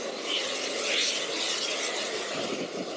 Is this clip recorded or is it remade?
recorded